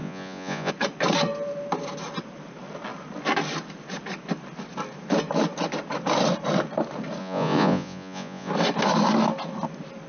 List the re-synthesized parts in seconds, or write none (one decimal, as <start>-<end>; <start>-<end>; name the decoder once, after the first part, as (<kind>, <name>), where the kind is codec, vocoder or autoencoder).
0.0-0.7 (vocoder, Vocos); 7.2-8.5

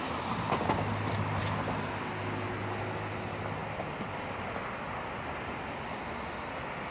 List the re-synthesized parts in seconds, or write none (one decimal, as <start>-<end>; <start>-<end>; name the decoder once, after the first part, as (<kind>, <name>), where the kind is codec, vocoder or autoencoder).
none

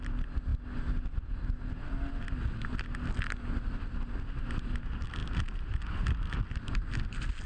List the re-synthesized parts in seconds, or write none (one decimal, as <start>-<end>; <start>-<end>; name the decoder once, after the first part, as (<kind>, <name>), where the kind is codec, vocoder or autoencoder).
none

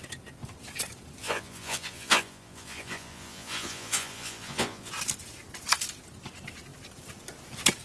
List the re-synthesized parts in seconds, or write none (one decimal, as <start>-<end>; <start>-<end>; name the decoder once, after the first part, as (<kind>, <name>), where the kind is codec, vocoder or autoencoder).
1.2-4.9 (vocoder, Vocos)